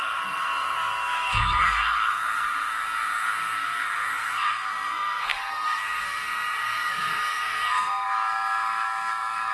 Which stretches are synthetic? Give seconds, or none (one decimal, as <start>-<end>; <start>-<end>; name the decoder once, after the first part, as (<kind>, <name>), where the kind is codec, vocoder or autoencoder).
0.0-9.5 (codec, SNAC)